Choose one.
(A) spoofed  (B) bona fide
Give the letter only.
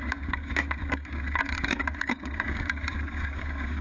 A